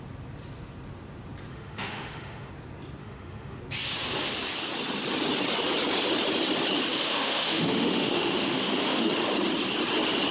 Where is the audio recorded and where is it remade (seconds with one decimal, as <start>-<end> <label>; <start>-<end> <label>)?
0.0-1.5 recorded; 1.5-2.5 remade; 2.5-3.0 recorded; 3.0-3.6 remade; 3.6-6.9 recorded; 6.9-9.1 remade; 9.1-10.3 recorded